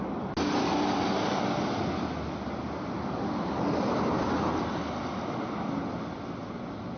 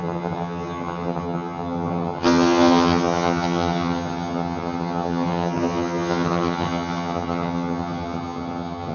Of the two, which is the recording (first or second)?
first